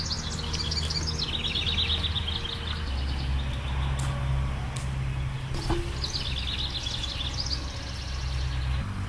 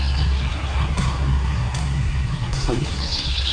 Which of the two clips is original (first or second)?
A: first